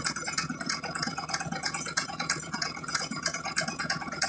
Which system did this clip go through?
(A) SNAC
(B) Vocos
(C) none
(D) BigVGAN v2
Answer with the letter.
B